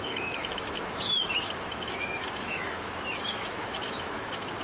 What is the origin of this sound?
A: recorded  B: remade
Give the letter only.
B